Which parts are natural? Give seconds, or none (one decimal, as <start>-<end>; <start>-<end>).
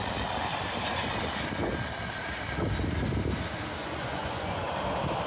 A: 0.0-3.8; 4.7-5.3